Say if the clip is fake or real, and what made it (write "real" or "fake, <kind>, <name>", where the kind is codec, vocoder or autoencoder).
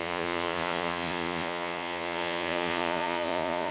fake, vocoder, Vocos